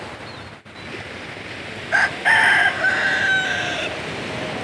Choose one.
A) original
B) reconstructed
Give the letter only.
A